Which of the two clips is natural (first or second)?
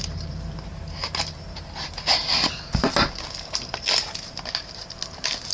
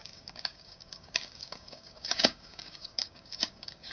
first